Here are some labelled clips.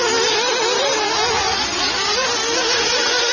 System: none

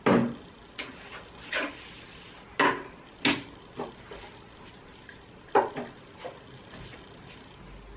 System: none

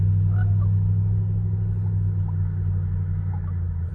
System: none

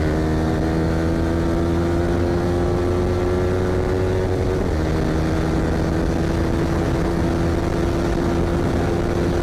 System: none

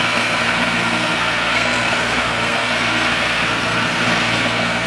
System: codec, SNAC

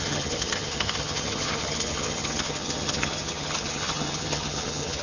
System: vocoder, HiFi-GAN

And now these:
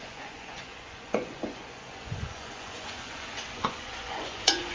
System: vocoder, Vocos